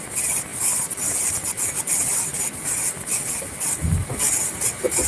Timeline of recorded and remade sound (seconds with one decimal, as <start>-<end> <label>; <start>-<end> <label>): 0.0-5.1 recorded